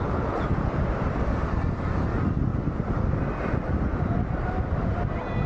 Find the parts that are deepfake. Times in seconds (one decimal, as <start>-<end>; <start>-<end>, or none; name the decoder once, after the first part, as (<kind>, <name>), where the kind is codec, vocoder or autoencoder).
none